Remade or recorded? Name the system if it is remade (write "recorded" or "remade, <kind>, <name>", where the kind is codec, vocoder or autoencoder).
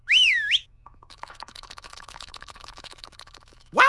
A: remade, autoencoder, DAC-VAE